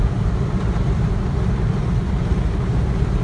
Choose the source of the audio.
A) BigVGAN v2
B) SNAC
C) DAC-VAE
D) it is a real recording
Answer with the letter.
D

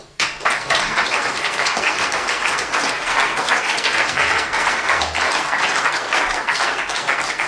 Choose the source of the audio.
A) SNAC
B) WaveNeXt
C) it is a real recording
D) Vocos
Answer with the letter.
A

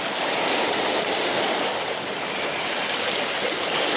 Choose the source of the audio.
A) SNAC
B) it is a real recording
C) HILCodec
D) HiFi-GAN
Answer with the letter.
B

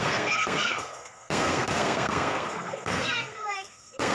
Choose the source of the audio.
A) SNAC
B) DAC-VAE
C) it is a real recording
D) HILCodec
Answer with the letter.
A